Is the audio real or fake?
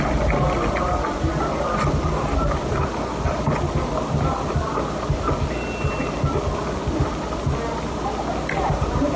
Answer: real